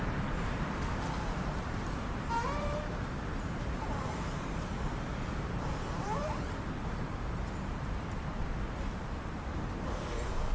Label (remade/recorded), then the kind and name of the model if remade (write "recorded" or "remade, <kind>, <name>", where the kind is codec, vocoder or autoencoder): remade, vocoder, BigVGAN v2